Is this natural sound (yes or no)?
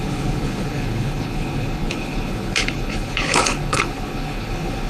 no